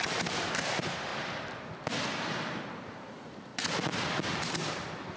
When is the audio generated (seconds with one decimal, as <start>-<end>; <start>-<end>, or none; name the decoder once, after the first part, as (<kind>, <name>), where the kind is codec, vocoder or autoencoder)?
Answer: 0.0-1.1 (vocoder, BigVGAN v2); 2.6-3.5; 4.5-5.2